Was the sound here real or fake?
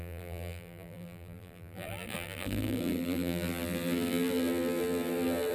fake